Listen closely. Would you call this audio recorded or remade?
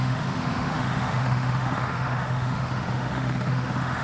remade